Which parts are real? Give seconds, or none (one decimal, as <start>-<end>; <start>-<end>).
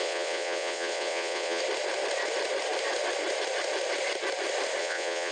1.6-4.8